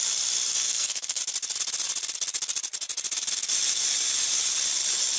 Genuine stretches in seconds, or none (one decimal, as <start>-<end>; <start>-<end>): 0.0-0.5; 1.2-5.2